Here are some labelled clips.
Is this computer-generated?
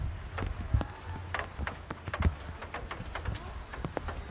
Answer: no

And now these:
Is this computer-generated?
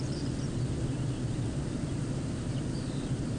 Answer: no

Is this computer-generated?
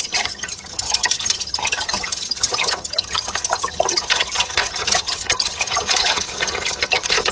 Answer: yes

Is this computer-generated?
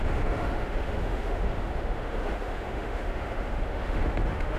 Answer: yes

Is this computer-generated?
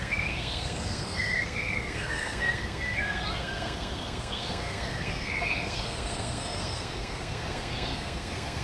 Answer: yes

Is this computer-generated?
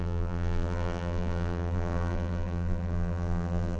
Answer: yes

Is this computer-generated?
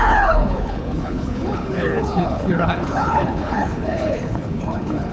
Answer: yes